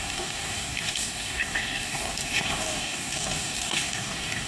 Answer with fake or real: fake